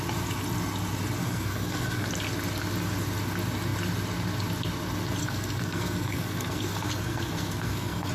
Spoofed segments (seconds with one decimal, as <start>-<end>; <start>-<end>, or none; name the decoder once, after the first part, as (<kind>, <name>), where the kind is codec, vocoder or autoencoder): 1.2-2.1 (codec, SNAC); 5.2-8.1